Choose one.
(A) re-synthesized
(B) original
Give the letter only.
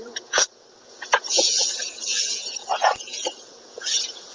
A